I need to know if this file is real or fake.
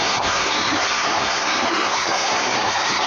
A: fake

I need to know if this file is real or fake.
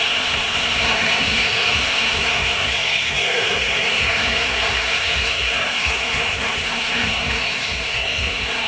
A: fake